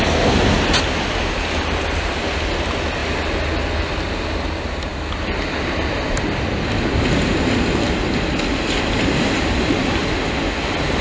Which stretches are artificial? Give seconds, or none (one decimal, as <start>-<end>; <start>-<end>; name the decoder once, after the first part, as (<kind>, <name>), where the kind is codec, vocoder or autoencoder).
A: none